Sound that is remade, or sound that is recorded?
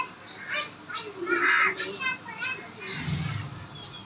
recorded